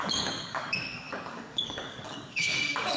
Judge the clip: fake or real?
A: fake